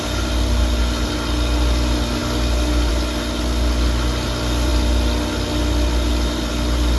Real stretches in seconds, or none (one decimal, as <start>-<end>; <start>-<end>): 0.0-7.0